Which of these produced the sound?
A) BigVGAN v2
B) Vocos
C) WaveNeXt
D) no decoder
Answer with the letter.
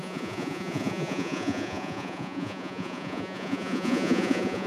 B